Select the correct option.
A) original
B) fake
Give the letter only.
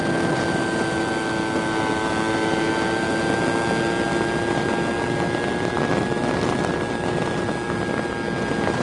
A